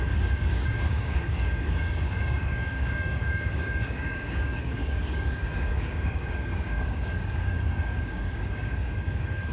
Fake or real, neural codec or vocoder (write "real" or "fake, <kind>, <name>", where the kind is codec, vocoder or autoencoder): fake, codec, DAC